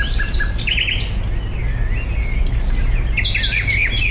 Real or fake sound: real